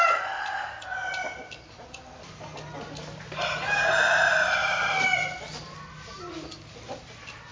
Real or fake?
real